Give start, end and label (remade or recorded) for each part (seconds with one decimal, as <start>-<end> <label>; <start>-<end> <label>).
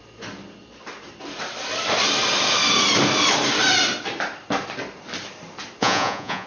0.0-5.8 recorded; 5.8-6.5 remade